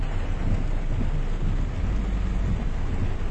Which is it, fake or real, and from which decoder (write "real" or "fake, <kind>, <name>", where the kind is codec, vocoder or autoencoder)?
real